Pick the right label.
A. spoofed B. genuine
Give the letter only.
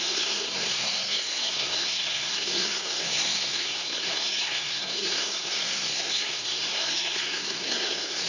A